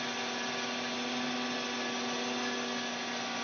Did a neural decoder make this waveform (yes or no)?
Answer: no